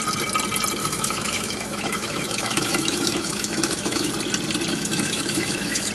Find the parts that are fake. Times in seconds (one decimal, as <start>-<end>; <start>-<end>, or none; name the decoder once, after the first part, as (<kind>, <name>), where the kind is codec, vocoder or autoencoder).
0.8-4.1 (autoencoder, DAC-VAE); 4.7-5.9